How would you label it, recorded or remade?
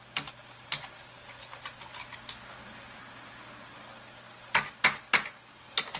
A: recorded